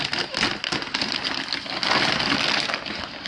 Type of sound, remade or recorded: recorded